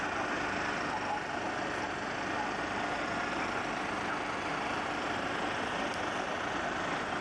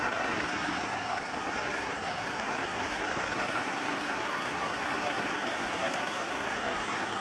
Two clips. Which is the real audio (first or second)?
first